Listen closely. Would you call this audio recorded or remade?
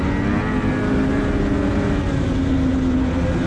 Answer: recorded